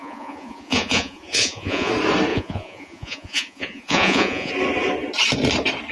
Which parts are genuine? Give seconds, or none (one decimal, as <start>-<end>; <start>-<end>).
1.9-2.3; 4.5-5.9